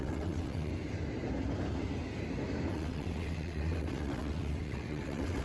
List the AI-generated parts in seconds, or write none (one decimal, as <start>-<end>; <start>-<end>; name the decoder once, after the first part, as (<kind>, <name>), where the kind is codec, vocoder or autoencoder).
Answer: 0.0-0.7 (vocoder, WaveNeXt); 2.7-5.4